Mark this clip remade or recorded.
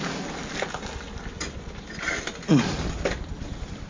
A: recorded